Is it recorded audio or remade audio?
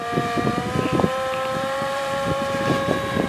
remade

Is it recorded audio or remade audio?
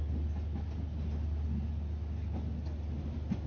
recorded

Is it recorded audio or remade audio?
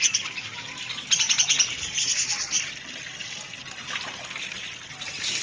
recorded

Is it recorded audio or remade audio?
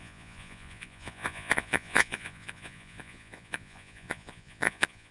remade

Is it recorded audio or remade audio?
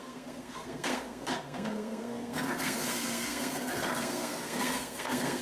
remade